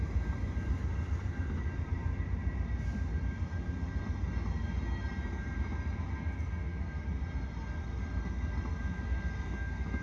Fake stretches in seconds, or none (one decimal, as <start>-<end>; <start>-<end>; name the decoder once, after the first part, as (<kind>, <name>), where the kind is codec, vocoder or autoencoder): 0.9-1.4 (vocoder, BigVGAN v2)